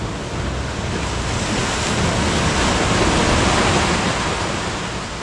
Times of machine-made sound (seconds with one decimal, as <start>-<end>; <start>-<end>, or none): none